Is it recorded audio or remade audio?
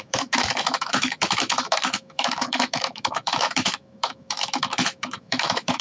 remade